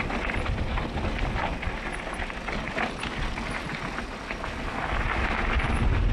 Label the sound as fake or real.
real